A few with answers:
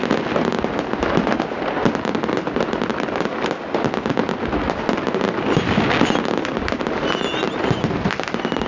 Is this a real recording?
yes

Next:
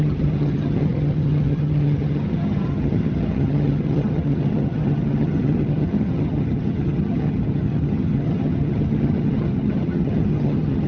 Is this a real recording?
no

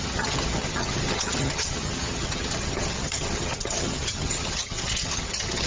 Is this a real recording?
no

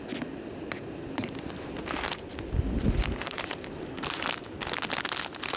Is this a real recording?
yes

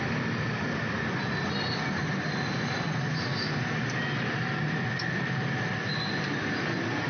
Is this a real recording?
yes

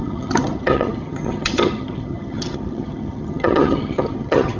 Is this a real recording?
no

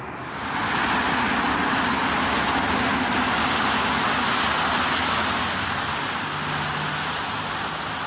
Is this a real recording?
yes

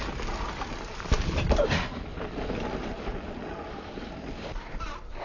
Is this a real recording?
yes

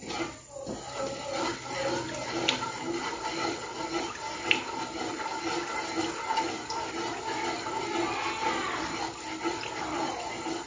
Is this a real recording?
yes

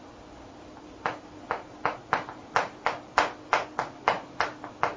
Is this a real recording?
yes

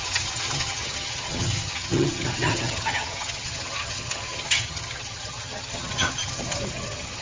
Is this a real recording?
no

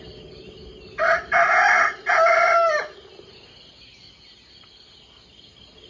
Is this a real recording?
yes